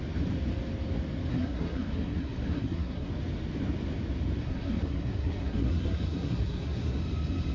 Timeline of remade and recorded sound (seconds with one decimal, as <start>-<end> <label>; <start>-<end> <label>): 0.0-1.3 recorded; 1.3-3.1 remade; 3.1-4.4 recorded; 4.4-7.0 remade; 7.0-7.5 recorded